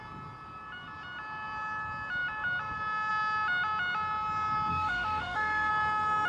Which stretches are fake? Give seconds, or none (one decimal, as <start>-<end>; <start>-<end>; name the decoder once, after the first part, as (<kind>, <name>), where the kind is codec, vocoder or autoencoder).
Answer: 4.7-5.7 (autoencoder, DAC-VAE)

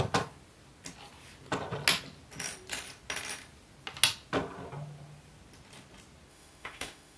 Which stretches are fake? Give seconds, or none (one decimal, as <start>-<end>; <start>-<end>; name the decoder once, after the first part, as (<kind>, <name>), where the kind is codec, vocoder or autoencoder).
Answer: 6.3-7.2 (autoencoder, DAC-VAE)

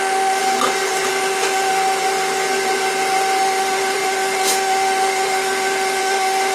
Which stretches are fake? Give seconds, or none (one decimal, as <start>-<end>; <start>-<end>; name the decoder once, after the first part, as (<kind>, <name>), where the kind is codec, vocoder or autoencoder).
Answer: 0.0-0.4 (autoencoder, DAC-VAE); 1.1-1.7; 3.4-6.5

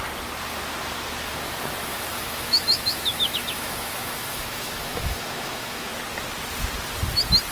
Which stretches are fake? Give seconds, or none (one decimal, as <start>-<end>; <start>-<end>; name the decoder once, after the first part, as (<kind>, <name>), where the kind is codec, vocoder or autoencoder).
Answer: 1.9-5.9 (autoencoder, DAC-VAE)

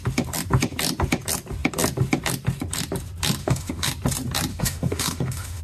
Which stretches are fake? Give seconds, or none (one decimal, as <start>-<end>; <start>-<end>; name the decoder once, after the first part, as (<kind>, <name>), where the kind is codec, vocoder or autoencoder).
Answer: 3.4-3.9 (autoencoder, DAC-VAE); 4.5-5.6